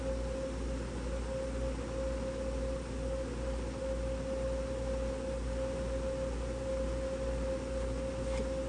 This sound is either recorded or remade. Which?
recorded